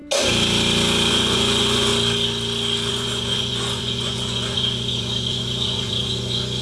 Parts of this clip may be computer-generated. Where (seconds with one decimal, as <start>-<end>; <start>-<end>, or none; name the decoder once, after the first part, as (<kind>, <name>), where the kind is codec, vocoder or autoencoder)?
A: 1.1-1.9 (vocoder, Vocos); 2.9-6.6